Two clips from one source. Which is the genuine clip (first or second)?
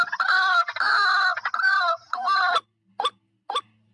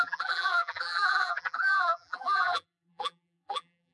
first